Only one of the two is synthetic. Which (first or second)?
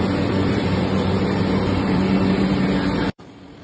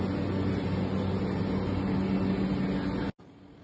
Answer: first